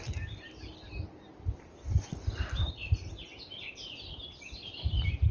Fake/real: real